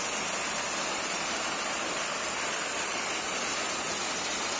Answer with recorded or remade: recorded